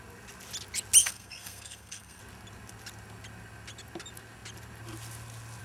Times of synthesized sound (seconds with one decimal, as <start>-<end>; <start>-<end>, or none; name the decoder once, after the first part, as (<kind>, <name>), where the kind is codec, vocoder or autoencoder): 1.0-2.2 (codec, SNAC)